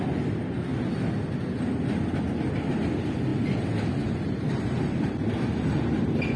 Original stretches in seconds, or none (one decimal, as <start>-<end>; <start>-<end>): 0.0-6.4